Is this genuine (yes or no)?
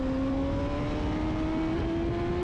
yes